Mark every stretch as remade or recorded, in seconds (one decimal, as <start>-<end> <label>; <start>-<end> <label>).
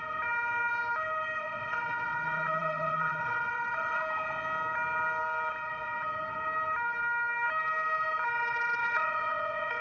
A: 0.0-1.4 recorded; 1.4-4.0 remade; 4.0-8.8 recorded; 8.8-9.8 remade